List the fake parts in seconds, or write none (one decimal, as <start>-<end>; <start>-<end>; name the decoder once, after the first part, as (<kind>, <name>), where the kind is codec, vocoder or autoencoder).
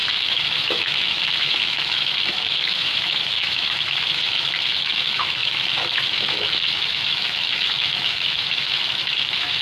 0.0-9.6 (autoencoder, DAC-VAE)